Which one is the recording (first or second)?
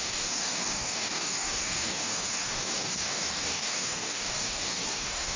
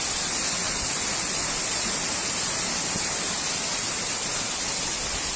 second